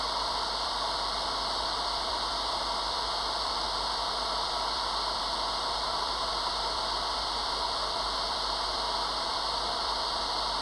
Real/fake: fake